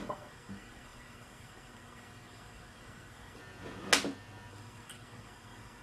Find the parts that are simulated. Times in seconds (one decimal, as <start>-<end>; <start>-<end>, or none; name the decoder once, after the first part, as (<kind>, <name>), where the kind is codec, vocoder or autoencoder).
0.0-3.4 (codec, SNAC); 4.5-5.8